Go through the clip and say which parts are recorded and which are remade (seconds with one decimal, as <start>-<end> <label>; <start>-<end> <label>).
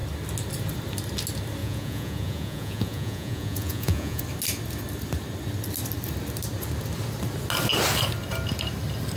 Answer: 0.0-1.6 recorded; 1.6-4.2 remade; 4.2-9.2 recorded